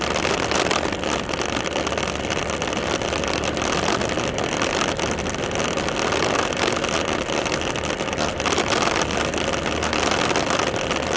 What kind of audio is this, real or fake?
real